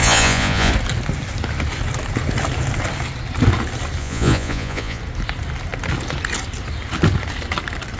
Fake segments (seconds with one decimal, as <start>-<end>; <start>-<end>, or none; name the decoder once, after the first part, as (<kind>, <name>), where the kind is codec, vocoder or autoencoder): 0.0-0.7 (vocoder, Vocos); 4.0-5.0